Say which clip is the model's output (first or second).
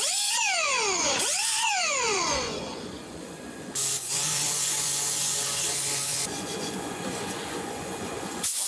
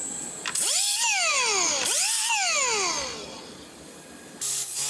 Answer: first